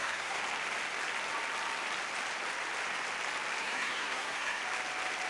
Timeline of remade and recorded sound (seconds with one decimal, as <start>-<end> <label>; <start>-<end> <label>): 0.0-0.4 remade; 0.4-3.6 recorded; 3.6-4.6 remade; 4.6-5.3 recorded

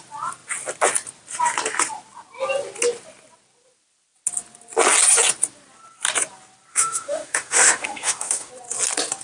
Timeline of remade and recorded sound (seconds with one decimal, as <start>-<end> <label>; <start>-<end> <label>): 0.0-6.7 recorded; 6.7-8.5 remade; 8.5-9.2 recorded

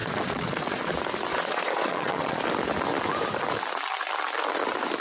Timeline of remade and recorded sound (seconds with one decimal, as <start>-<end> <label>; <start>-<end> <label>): 0.0-0.9 remade; 0.9-1.3 recorded; 1.3-2.4 remade; 2.4-5.0 recorded

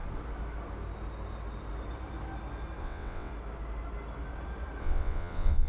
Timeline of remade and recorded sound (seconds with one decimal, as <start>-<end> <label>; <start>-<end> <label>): 0.0-2.8 recorded; 2.8-3.3 remade; 3.3-4.8 recorded; 4.8-5.7 remade

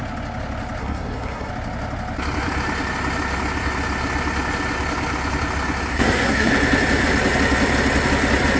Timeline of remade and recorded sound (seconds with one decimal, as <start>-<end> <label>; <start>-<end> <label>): 0.0-0.8 recorded; 0.8-1.5 remade; 1.5-5.9 recorded; 5.9-6.5 remade; 6.5-8.6 recorded